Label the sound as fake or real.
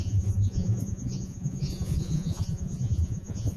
fake